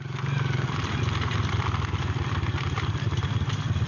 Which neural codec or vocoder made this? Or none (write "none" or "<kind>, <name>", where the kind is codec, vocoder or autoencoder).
none